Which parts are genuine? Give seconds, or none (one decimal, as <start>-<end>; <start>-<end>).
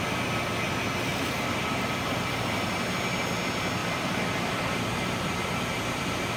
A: 0.0-1.1; 2.7-3.8; 5.3-6.4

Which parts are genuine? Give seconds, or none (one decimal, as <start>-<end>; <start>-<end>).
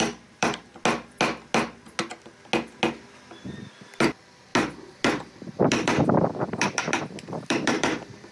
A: 0.7-3.4; 4.5-6.1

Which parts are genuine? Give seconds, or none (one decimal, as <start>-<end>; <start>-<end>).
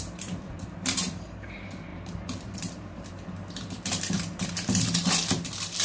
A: none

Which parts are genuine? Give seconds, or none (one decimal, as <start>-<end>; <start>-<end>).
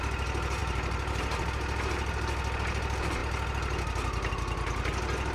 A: 0.0-0.6; 1.4-5.3